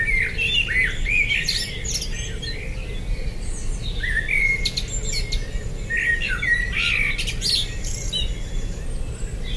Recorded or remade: recorded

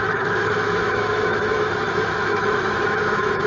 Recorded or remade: remade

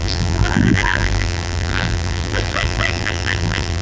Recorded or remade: remade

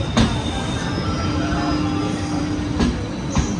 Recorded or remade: recorded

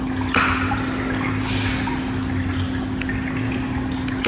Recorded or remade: recorded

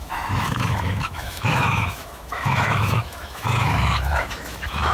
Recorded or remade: remade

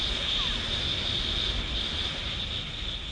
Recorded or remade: recorded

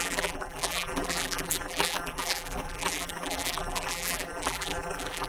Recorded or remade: remade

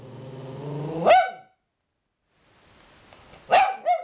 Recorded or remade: recorded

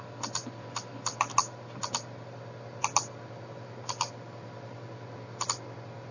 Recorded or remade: recorded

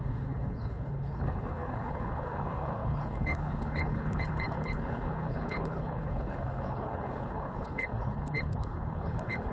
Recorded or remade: remade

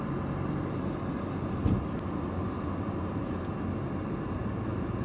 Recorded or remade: recorded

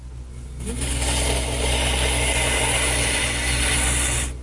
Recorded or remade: recorded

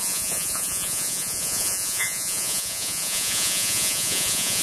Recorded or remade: remade